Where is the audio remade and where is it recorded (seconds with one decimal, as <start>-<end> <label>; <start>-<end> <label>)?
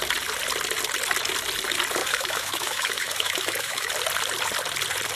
0.0-2.0 recorded; 2.0-3.9 remade; 3.9-5.2 recorded